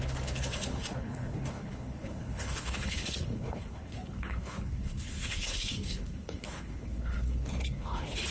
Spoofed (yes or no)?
yes